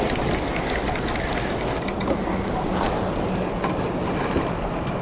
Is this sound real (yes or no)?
yes